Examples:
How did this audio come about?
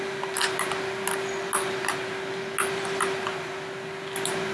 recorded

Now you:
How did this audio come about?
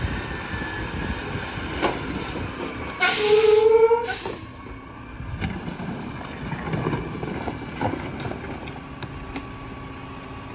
recorded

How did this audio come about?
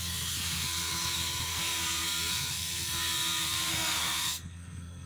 remade